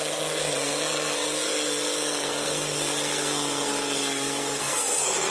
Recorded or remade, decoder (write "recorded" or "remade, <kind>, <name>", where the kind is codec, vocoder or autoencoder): remade, codec, SNAC